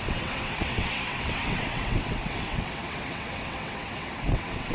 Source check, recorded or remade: remade